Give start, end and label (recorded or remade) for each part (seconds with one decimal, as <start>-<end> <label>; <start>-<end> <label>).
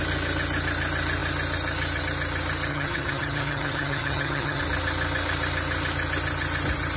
0.0-2.7 recorded; 2.7-4.6 remade; 4.6-7.0 recorded